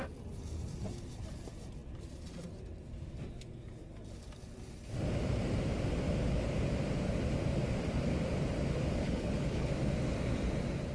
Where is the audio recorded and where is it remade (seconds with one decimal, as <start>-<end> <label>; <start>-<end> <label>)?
0.0-9.0 recorded; 9.0-9.7 remade; 9.7-10.9 recorded

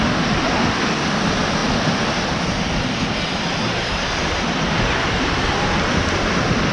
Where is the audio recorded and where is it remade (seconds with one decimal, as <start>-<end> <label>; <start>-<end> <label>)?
0.0-6.7 recorded